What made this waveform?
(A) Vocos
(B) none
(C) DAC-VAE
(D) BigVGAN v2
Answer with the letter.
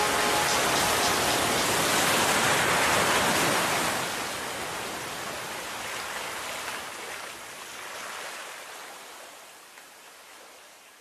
B